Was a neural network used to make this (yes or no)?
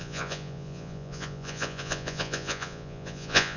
yes